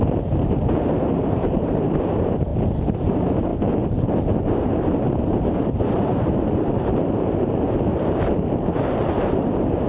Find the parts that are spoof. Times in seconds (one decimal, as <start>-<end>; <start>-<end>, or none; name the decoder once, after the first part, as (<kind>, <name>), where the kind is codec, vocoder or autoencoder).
0.0-2.5 (vocoder, BigVGAN v2); 3.0-3.5; 4.4-9.9